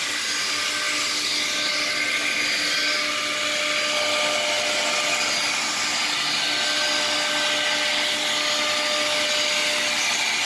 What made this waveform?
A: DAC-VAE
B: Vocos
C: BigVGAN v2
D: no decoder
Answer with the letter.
D